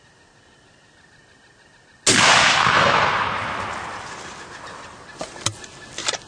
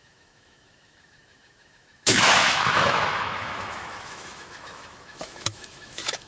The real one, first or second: first